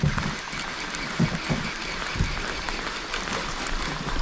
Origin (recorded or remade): recorded